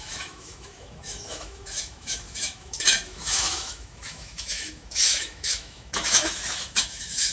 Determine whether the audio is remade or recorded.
remade